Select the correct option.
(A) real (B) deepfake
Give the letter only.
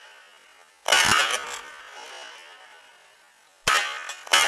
A